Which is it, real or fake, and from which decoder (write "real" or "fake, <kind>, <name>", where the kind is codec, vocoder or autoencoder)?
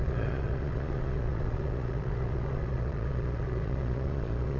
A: fake, vocoder, Vocos